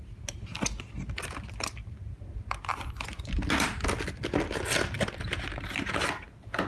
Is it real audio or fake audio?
real